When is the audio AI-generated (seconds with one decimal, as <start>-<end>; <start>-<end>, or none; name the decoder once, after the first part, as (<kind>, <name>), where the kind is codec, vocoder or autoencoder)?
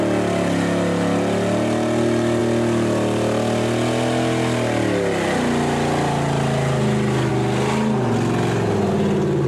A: none